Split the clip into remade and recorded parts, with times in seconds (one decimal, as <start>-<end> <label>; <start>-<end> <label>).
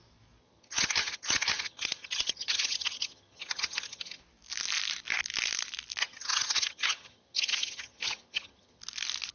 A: 0.0-0.4 recorded; 0.4-4.2 remade; 4.2-6.0 recorded; 6.0-8.8 remade; 8.8-9.3 recorded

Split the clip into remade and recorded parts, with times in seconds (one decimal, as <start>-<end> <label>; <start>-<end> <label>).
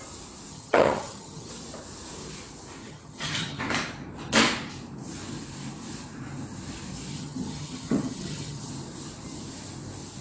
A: 0.0-0.5 recorded; 0.5-1.5 remade; 1.5-2.8 recorded; 2.8-3.6 remade; 3.6-7.1 recorded; 7.1-8.7 remade; 8.7-10.2 recorded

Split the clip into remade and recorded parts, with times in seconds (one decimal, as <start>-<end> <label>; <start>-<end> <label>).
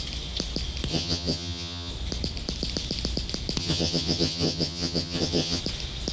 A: 0.0-0.9 recorded; 0.9-1.9 remade; 1.9-3.6 recorded; 3.6-5.6 remade; 5.6-6.1 recorded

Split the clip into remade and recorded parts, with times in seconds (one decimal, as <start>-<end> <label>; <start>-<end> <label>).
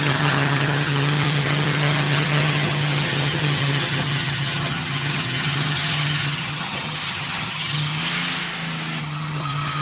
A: 0.0-8.0 remade; 8.0-9.0 recorded; 9.0-9.8 remade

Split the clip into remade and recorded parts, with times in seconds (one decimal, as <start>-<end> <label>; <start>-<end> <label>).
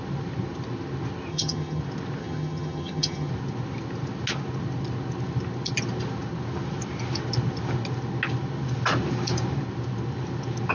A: 0.0-1.3 recorded; 1.3-1.8 remade; 1.8-2.2 recorded; 2.2-3.3 remade; 3.3-10.7 recorded